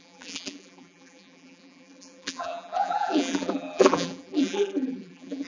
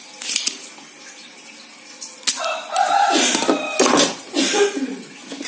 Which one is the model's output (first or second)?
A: first